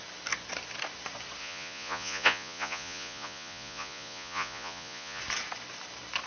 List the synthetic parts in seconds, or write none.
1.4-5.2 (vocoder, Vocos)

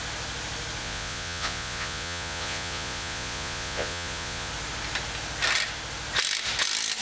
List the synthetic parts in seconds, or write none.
0.8-4.5 (vocoder, Vocos)